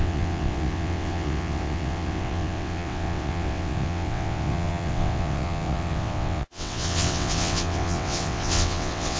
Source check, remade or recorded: remade